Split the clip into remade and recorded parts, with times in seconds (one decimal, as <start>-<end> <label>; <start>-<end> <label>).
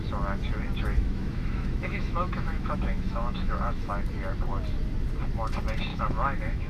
0.0-0.9 recorded; 0.9-3.9 remade; 3.9-5.9 recorded; 5.9-6.7 remade